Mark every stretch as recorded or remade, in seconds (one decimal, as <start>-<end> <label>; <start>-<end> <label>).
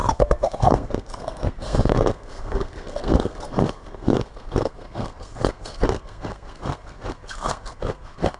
0.0-8.4 remade